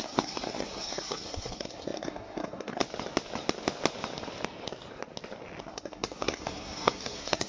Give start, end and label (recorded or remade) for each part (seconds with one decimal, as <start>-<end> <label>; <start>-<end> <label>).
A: 0.0-2.8 remade; 2.8-5.6 recorded; 5.6-7.5 remade